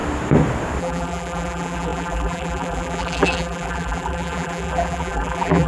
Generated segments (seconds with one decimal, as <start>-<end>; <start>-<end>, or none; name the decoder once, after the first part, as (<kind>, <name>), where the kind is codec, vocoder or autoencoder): 0.8-5.7 (vocoder, BigVGAN v2)